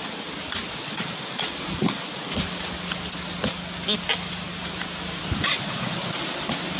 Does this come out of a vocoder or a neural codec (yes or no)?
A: no